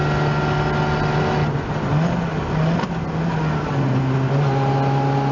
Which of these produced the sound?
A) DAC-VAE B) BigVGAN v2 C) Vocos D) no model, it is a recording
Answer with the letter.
D